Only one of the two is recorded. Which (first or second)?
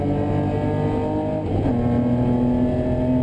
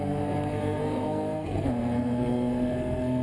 first